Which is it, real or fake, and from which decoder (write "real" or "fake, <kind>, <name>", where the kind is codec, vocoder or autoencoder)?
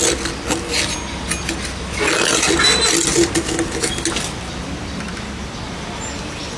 real